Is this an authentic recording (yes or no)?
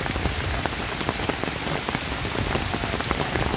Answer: yes